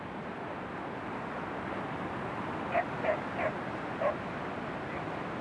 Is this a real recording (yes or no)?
yes